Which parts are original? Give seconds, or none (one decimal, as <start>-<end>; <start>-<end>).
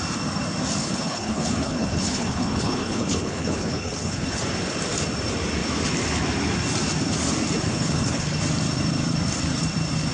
0.0-0.8; 4.4-7.7; 8.4-10.1